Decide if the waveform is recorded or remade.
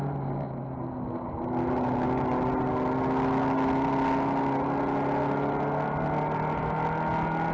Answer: recorded